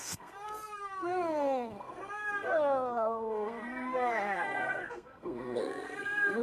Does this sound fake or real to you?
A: fake